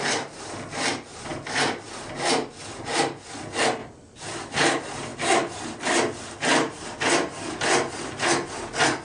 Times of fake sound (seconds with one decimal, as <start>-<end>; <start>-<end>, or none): 3.8-4.6